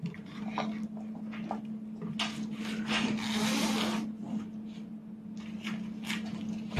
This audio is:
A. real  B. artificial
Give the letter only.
A